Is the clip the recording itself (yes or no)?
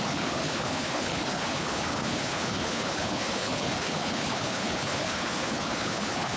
no